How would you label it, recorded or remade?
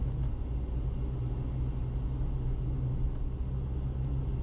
recorded